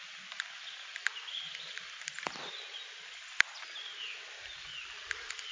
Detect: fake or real real